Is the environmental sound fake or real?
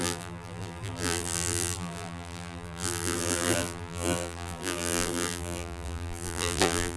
fake